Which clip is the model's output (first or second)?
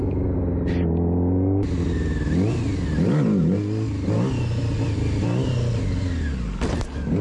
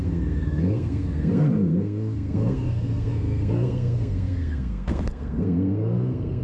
second